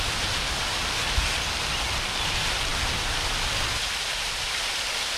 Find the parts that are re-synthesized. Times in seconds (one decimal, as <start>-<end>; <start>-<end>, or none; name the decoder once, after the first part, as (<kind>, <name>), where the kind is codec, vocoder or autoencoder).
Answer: none